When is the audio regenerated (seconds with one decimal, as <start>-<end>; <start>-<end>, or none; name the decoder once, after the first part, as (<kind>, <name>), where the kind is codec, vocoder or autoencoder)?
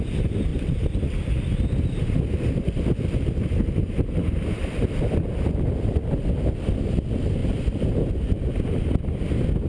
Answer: 0.5-3.9 (vocoder, BigVGAN v2); 4.6-6.7; 7.4-8.9